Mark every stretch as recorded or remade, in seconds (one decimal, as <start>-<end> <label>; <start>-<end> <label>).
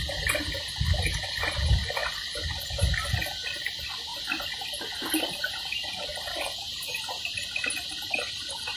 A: 0.0-6.1 recorded; 6.1-6.7 remade; 6.7-8.8 recorded